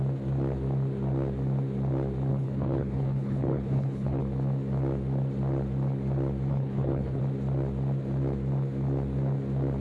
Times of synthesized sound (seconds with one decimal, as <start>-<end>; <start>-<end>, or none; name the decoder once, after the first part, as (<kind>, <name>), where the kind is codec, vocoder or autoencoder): 2.3-4.2 (codec, HILCodec); 6.5-7.2

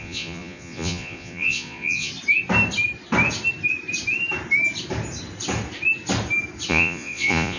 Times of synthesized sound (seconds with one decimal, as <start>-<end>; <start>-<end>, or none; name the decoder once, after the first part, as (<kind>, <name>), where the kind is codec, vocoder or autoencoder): 0.0-2.1 (vocoder, Vocos); 6.7-7.6

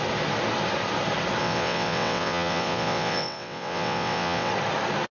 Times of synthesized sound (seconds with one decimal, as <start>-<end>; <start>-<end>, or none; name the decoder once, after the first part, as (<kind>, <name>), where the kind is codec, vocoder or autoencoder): 1.4-4.5 (vocoder, WaveNeXt)

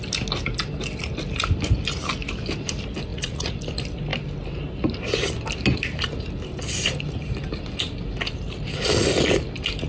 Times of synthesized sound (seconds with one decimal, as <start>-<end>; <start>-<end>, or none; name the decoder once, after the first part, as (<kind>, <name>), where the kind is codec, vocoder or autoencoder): 3.1-3.6 (vocoder, Vocos)

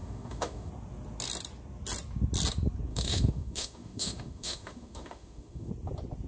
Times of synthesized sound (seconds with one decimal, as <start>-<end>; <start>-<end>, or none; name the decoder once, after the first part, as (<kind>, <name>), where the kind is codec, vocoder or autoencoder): 0.0-0.7 (autoencoder, DAC-VAE); 2.9-5.7

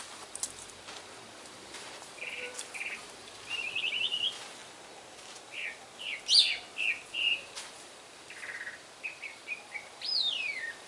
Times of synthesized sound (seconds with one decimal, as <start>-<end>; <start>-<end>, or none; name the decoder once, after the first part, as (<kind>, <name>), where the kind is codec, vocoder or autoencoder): 0.0-4.6 (vocoder, BigVGAN v2); 7.1-10.9